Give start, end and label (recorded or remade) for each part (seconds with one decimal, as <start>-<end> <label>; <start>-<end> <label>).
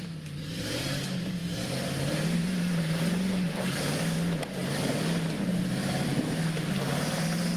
0.0-7.6 remade